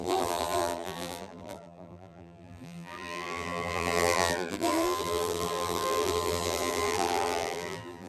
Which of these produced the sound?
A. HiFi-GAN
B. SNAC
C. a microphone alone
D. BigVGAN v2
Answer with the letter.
D